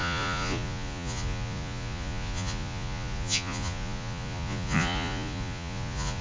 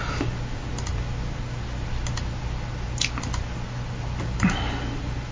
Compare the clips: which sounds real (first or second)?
second